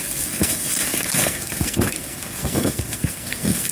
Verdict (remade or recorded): remade